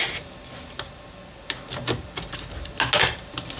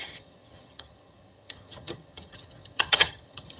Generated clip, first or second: second